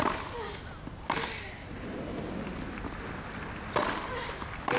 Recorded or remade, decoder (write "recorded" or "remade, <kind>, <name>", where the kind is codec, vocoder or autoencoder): recorded